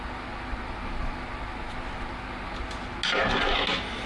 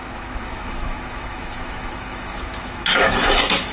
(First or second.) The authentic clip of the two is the first